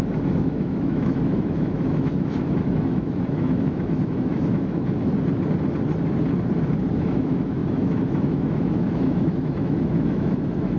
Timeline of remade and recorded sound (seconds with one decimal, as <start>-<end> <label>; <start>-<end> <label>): 0.0-5.1 remade; 5.1-6.9 recorded; 6.9-10.8 remade